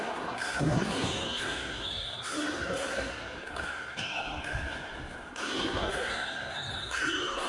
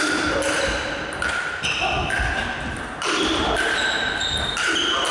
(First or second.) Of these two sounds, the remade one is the first